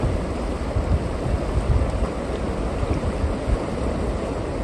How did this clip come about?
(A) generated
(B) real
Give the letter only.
B